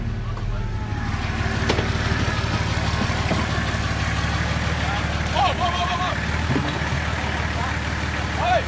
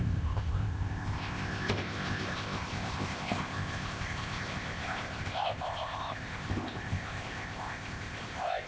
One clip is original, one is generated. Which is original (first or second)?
first